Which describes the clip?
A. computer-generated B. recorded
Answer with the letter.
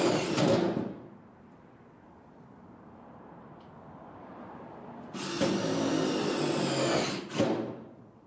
B